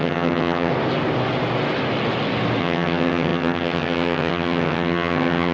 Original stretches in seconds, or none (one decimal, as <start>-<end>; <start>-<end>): 0.7-2.6